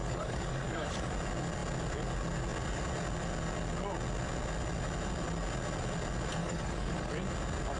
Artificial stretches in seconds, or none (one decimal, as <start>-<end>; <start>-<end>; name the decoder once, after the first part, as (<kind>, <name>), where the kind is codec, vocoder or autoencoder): 0.0-1.1 (codec, DAC); 6.4-7.1